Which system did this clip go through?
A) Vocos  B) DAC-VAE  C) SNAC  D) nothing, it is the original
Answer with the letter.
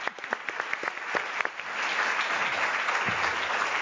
D